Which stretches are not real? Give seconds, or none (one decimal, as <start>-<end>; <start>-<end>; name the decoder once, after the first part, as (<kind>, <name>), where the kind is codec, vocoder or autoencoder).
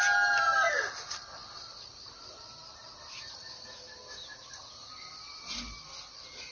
none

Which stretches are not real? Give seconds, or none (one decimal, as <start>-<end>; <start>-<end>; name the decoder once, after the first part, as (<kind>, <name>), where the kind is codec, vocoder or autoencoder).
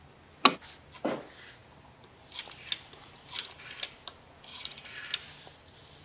4.5-5.1 (vocoder, Vocos)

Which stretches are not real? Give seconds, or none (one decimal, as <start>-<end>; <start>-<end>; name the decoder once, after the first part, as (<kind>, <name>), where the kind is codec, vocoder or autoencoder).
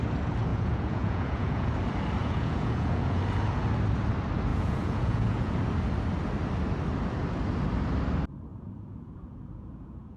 0.5-1.7 (vocoder, Vocos); 2.2-3.2; 4.5-5.5; 8.5-10.2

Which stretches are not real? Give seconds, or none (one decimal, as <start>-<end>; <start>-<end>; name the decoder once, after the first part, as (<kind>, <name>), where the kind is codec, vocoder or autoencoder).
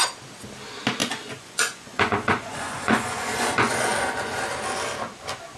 1.0-4.4 (vocoder, Vocos)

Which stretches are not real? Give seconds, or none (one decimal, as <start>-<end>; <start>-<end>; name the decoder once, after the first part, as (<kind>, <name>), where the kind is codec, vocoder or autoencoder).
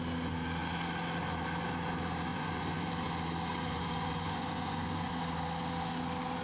2.3-3.1 (vocoder, Vocos); 3.5-5.1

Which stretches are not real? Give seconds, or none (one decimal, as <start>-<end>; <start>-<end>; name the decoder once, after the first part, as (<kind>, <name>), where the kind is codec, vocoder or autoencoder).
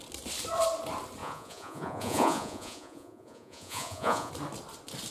1.2-4.3 (vocoder, Vocos)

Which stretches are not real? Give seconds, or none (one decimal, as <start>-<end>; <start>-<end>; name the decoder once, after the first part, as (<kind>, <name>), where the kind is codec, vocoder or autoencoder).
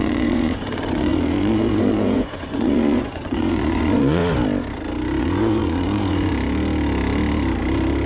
0.0-4.2 (vocoder, Vocos); 5.2-6.3